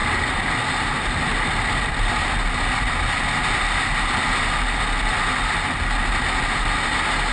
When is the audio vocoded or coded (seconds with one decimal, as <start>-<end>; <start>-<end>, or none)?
none